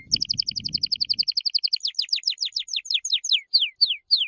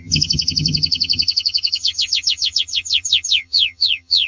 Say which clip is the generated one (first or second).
second